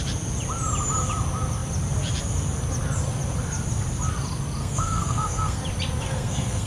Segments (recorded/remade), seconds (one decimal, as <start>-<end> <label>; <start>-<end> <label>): 0.0-4.6 recorded; 4.6-5.6 remade; 5.6-6.0 recorded; 6.0-6.7 remade